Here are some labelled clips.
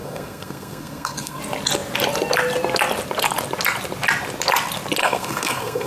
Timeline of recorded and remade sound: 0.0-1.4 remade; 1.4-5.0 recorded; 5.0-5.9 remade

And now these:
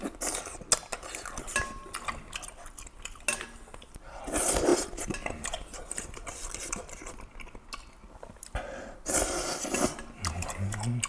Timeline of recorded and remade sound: 0.0-11.1 recorded

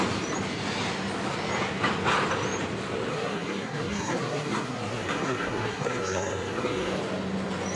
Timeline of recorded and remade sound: 0.0-3.1 recorded; 3.1-7.0 remade; 7.0-7.8 recorded

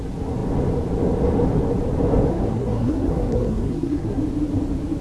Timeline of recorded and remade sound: 0.0-2.3 recorded; 2.3-4.2 remade; 4.2-5.0 recorded